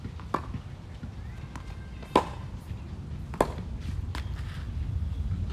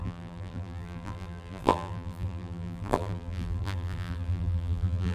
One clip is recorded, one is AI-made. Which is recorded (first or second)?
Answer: first